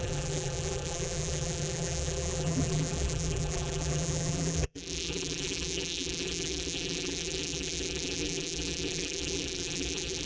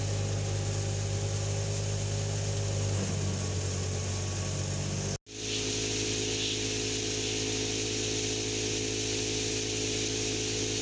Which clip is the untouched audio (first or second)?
second